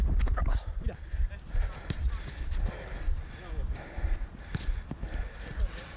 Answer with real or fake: real